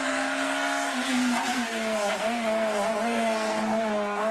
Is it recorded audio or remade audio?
remade